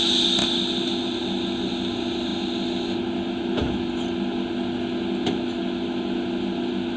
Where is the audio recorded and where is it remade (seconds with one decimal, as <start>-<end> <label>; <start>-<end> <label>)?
0.0-7.0 recorded